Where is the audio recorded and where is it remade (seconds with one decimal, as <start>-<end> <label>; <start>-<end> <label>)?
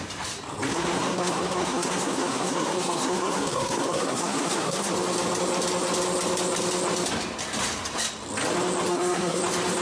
0.0-0.7 recorded; 0.7-4.9 remade; 4.9-8.9 recorded; 8.9-9.4 remade; 9.4-9.8 recorded